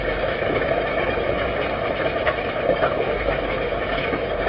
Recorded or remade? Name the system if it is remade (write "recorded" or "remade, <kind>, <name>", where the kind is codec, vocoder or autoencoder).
remade, autoencoder, DAC-VAE